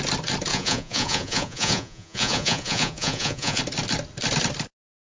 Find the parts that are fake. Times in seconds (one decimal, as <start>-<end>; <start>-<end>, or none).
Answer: 0.5-3.6